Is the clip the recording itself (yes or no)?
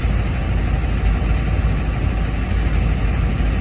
yes